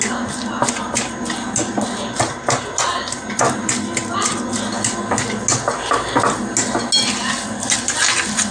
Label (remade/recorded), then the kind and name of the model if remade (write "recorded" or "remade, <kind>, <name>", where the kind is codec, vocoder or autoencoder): recorded